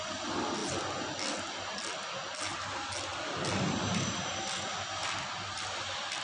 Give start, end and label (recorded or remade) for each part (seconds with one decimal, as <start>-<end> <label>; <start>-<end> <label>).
0.0-6.2 recorded